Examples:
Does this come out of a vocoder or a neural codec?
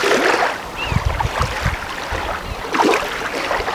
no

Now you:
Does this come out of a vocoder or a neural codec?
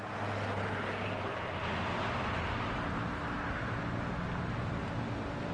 no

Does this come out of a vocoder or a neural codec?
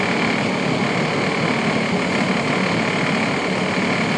no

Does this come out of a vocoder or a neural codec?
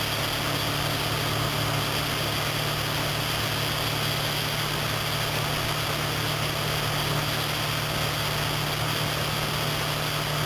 no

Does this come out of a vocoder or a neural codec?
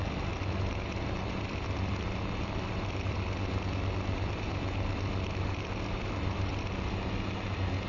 no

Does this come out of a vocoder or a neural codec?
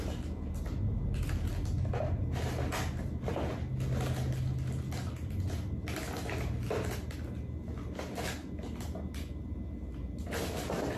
no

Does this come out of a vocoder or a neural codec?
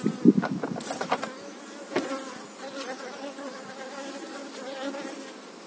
no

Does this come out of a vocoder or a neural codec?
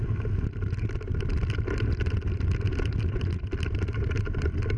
no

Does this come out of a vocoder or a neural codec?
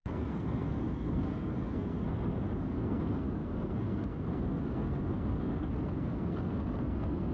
yes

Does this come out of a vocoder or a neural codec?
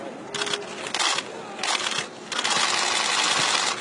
no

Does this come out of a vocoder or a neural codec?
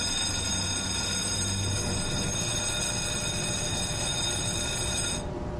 no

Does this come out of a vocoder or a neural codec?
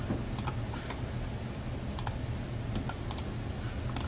no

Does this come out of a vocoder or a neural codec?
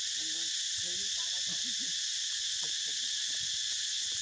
no